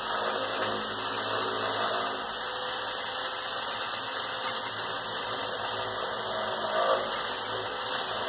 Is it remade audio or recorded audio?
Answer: recorded